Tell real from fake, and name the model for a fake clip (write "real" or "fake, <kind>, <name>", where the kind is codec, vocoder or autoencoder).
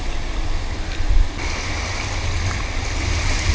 real